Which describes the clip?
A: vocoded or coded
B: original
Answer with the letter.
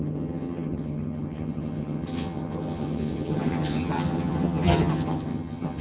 A